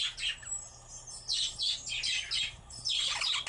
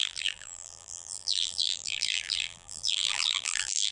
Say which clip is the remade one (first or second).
second